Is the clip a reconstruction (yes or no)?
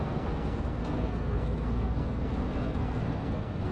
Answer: yes